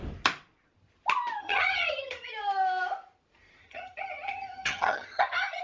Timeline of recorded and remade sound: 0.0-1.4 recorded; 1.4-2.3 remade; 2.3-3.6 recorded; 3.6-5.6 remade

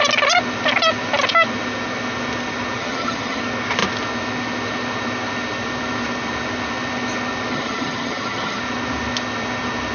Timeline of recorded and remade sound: 0.0-2.8 recorded; 2.8-3.4 remade; 3.4-7.5 recorded; 7.5-8.6 remade; 8.6-9.9 recorded

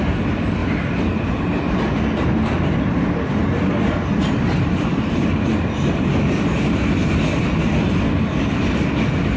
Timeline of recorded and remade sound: 0.0-9.4 recorded

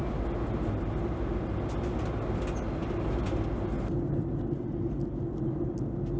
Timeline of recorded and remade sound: 0.0-6.2 recorded